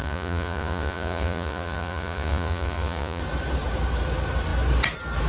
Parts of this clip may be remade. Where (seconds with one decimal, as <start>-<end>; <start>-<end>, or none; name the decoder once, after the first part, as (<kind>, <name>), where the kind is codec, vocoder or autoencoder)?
0.0-3.2 (vocoder, Vocos)